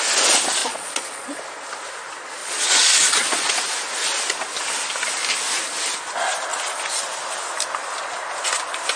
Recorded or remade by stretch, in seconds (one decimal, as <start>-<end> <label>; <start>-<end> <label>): 0.0-0.6 recorded; 0.6-1.4 remade; 1.4-2.4 recorded; 2.4-3.5 remade; 3.5-9.0 recorded